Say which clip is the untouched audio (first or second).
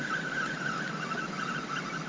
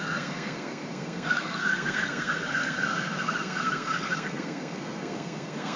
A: first